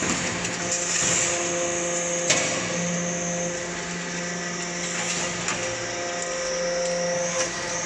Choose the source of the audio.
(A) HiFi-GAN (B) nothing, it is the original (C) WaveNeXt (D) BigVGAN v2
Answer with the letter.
B